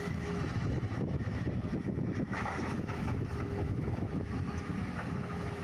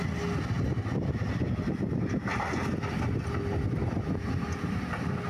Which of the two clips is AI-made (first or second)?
first